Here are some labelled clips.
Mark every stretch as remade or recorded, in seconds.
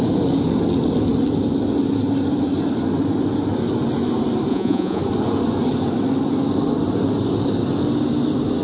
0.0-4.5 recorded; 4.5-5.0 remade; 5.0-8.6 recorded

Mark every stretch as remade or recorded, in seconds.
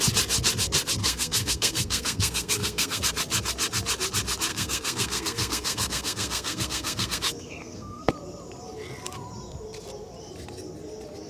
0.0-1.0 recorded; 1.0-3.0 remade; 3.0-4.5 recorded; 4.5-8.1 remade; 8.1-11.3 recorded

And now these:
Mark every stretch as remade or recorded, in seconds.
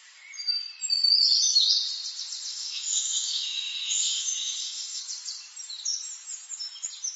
0.0-2.5 recorded; 2.5-5.0 remade; 5.0-7.2 recorded